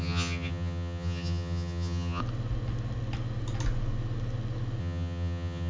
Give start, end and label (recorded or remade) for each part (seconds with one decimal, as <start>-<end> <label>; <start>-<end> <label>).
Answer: 0.0-2.2 remade; 2.2-4.8 recorded; 4.8-5.7 remade